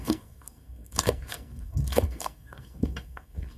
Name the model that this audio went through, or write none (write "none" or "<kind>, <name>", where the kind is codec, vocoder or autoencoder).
codec, SNAC